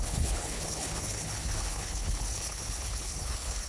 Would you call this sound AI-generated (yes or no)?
yes